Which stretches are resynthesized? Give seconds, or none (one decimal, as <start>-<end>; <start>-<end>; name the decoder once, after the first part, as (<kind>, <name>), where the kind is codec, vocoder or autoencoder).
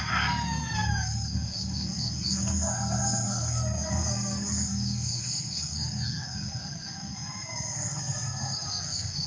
0.0-9.3 (codec, SNAC)